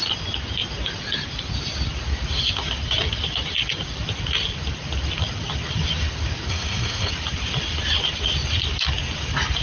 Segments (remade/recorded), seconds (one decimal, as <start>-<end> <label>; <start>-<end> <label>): 0.0-6.5 recorded; 6.5-7.1 remade; 7.1-9.6 recorded